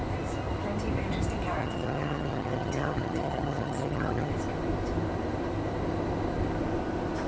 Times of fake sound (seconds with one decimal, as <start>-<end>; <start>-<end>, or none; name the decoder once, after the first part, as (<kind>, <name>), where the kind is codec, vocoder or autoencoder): 1.6-4.3 (vocoder, HiFi-GAN)